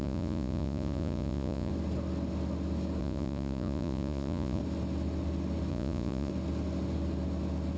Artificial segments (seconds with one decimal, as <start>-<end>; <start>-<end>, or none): 0.0-1.7; 3.0-4.6; 5.7-6.3